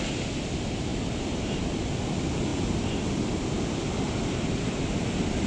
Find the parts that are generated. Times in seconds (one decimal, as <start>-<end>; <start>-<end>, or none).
none